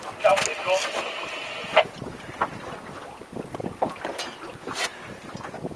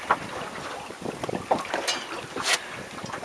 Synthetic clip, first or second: second